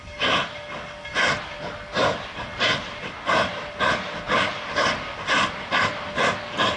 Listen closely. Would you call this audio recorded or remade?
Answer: recorded